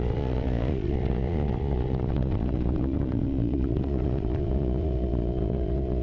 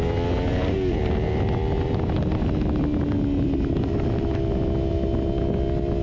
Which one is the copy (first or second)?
first